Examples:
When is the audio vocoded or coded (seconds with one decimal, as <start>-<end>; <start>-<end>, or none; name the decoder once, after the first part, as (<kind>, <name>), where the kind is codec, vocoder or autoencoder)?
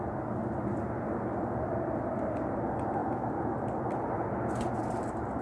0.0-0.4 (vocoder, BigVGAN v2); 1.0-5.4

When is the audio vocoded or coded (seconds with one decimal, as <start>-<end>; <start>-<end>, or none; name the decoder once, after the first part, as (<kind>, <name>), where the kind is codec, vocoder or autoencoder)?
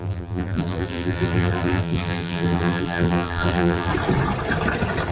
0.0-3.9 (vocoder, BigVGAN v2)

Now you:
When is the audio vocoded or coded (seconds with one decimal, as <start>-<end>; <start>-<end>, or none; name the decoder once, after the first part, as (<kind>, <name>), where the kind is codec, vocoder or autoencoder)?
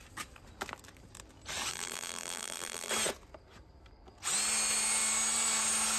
1.7-2.9 (vocoder, BigVGAN v2)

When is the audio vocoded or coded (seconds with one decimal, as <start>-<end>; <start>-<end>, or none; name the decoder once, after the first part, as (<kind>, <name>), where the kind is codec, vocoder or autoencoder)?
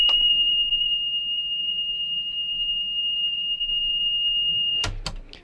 0.0-4.7 (vocoder, BigVGAN v2)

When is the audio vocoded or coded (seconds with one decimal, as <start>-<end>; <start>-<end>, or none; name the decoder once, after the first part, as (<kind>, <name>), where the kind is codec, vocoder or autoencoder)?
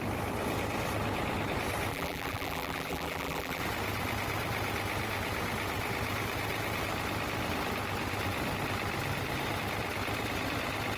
1.9-3.6 (vocoder, BigVGAN v2)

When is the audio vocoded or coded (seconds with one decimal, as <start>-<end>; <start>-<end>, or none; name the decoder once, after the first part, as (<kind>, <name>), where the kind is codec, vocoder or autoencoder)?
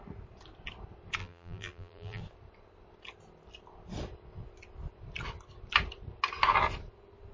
1.2-2.2 (vocoder, BigVGAN v2)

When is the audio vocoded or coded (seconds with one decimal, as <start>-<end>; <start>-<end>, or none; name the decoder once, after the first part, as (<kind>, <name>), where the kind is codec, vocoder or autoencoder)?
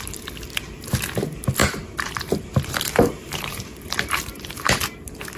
1.6-4.8 (vocoder, BigVGAN v2)